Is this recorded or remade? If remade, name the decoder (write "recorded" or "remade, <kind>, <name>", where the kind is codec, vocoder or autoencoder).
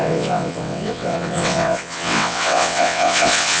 remade, vocoder, WaveNeXt